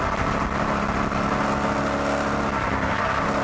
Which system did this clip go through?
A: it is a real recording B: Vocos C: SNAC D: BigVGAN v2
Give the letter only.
A